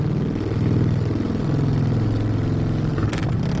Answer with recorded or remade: recorded